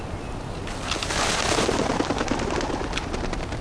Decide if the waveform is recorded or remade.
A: recorded